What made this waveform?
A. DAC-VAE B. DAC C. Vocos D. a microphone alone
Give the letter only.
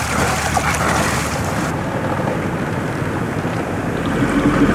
D